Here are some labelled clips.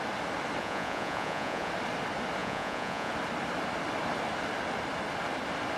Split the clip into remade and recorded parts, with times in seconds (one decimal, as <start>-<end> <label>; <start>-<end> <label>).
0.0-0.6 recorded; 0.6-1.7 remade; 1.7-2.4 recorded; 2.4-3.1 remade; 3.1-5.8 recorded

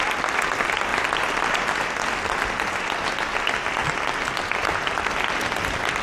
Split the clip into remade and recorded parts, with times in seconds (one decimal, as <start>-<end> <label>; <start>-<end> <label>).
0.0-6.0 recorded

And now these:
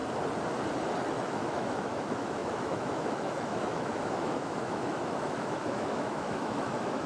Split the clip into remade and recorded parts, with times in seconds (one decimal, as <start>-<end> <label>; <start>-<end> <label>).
0.0-1.1 recorded; 1.1-7.1 remade

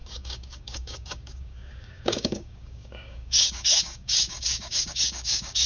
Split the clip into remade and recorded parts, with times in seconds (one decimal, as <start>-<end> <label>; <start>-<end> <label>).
0.0-5.7 remade

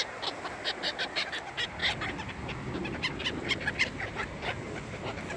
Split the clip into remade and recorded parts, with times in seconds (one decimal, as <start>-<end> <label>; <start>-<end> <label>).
0.0-5.4 recorded

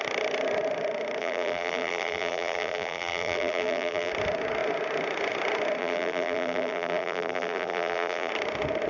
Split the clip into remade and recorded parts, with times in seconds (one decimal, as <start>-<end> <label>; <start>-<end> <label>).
0.0-1.2 recorded; 1.2-4.1 remade; 4.1-5.8 recorded; 5.8-8.3 remade; 8.3-8.9 recorded

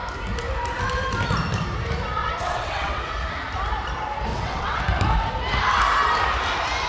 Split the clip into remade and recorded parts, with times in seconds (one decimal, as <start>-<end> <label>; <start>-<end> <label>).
0.0-2.2 recorded; 2.2-3.0 remade; 3.0-4.3 recorded; 4.3-4.8 remade; 4.8-6.9 recorded

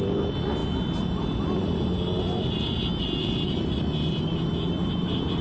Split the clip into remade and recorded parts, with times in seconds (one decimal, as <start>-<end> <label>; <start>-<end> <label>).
0.0-5.4 recorded